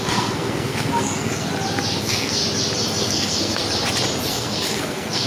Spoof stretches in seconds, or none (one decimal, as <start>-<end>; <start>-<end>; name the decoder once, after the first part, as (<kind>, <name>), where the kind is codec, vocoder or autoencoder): 0.0-1.5 (codec, SNAC); 2.0-2.4; 3.0-3.6; 4.3-5.3